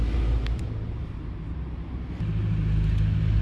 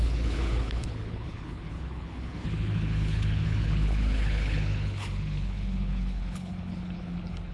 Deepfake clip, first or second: second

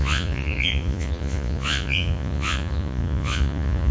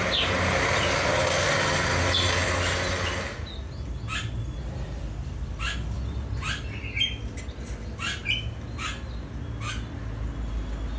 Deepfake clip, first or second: first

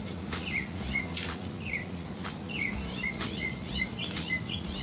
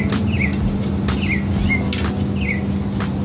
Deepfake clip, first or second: first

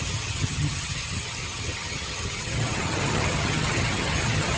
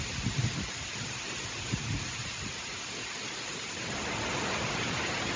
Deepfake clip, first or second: first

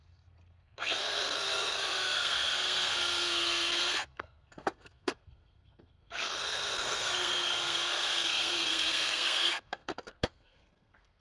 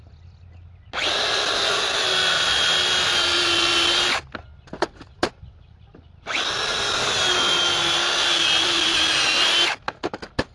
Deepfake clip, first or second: first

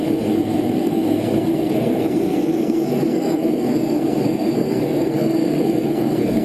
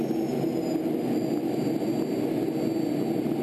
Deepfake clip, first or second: first